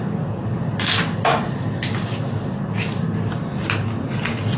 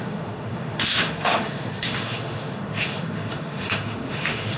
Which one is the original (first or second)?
first